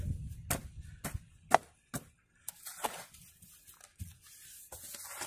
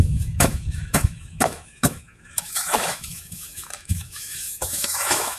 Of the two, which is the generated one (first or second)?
second